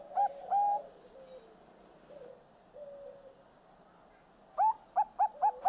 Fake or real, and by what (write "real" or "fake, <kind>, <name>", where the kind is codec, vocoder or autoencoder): real